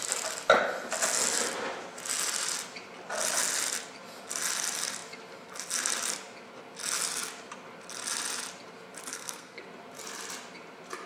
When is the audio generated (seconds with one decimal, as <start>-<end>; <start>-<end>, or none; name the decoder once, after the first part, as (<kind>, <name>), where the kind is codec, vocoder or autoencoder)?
9.1-9.6 (codec, SNAC)